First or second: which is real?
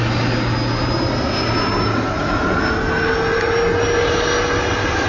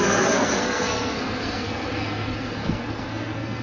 first